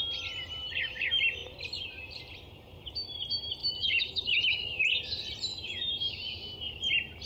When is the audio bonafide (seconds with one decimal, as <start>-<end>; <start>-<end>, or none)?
0.0-3.6; 4.8-5.5; 6.1-7.3